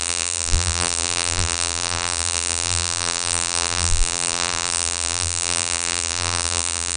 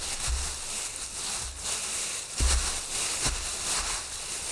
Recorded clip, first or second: second